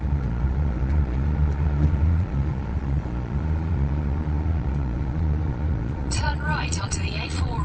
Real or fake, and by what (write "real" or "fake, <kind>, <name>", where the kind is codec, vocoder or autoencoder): fake, vocoder, Vocos